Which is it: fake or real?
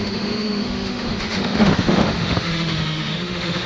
fake